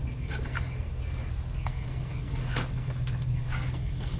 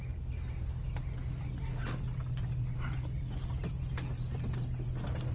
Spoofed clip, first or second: first